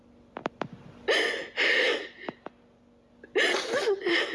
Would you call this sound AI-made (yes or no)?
no